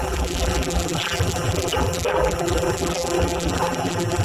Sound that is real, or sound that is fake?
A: fake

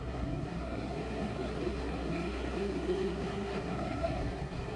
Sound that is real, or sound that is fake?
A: fake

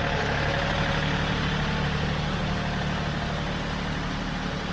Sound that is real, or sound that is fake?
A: real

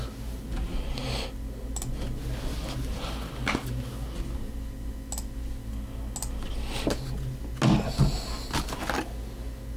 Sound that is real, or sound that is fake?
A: real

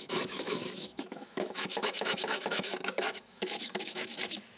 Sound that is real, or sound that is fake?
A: fake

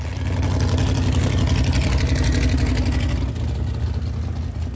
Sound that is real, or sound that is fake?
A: real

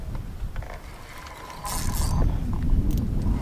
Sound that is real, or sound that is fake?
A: real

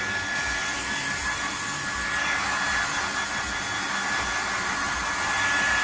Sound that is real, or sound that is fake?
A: real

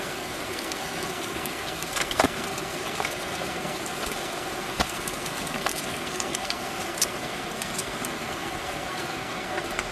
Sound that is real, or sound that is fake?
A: fake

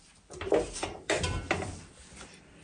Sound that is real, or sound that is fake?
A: fake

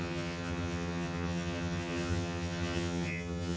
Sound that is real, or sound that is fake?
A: fake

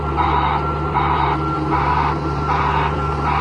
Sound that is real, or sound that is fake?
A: fake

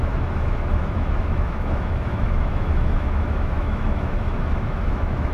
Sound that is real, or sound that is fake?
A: fake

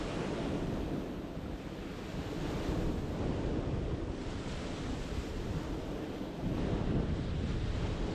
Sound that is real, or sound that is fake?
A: real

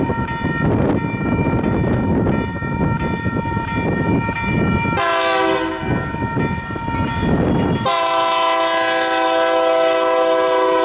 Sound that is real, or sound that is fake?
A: real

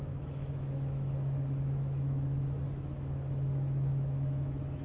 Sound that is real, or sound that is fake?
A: fake